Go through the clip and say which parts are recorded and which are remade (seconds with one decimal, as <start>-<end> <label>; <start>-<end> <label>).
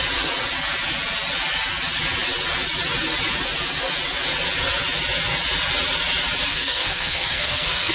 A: 0.0-6.5 recorded; 6.5-7.9 remade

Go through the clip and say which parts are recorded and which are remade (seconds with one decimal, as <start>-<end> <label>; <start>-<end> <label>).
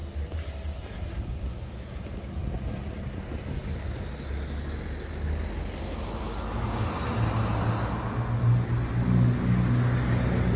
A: 0.0-10.6 recorded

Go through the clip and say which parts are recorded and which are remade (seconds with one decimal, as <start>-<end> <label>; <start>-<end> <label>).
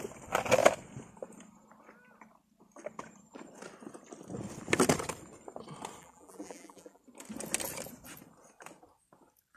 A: 0.0-6.0 recorded; 6.0-7.0 remade; 7.0-9.6 recorded